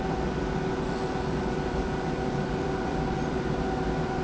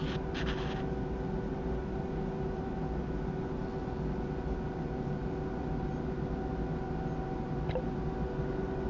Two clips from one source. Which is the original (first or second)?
second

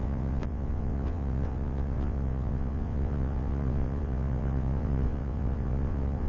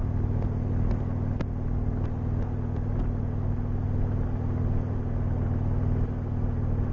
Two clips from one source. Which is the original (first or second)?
second